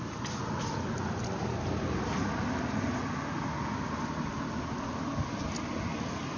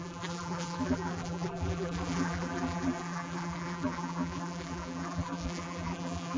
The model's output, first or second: second